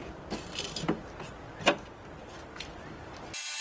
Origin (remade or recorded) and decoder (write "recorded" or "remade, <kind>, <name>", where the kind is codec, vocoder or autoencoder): recorded